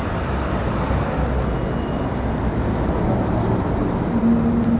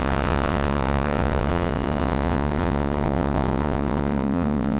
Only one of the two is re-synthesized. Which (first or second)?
second